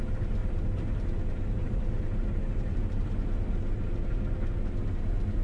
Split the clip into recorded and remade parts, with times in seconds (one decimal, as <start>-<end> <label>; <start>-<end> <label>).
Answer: 0.0-0.4 recorded; 0.4-3.6 remade; 3.6-5.4 recorded